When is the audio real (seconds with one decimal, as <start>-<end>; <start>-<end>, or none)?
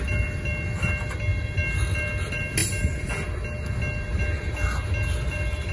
0.0-5.7